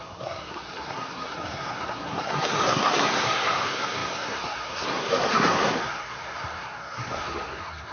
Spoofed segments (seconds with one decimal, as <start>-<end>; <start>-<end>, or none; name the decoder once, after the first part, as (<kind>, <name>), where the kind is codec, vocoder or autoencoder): 0.0-7.9 (codec, SNAC)